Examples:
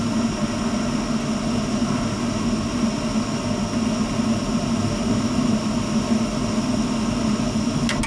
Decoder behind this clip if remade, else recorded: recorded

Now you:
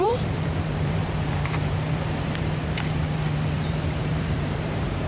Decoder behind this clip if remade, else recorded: remade, vocoder, BigVGAN v2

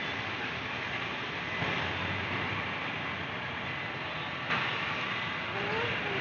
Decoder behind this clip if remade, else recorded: recorded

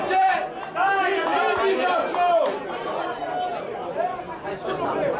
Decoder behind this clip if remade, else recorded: recorded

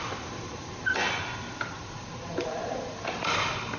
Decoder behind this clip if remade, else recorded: remade, vocoder, BigVGAN v2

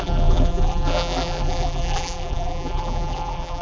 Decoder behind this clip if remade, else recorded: remade, vocoder, BigVGAN v2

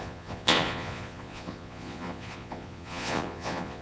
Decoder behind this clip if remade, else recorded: remade, vocoder, Vocos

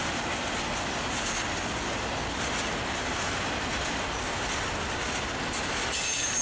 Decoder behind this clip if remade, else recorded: recorded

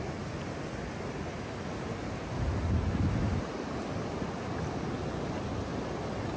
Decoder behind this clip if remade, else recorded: recorded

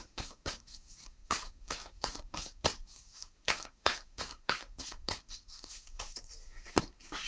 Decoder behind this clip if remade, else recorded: remade, codec, SNAC